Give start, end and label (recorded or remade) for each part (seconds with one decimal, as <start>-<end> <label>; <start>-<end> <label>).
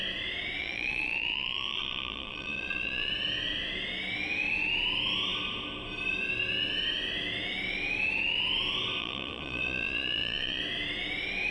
0.0-0.6 recorded; 0.6-3.1 remade; 3.1-9.0 recorded; 9.0-10.6 remade; 10.6-11.5 recorded